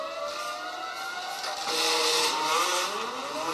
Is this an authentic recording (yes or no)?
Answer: yes